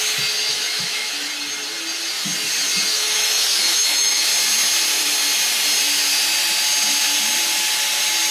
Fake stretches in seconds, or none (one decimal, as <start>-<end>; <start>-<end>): 0.5-1.3; 2.9-4.3